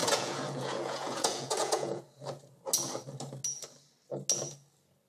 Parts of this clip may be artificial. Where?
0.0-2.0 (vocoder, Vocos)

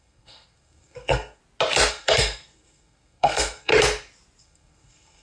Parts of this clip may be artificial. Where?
0.0-1.4 (codec, SNAC); 1.9-3.7; 4.4-5.2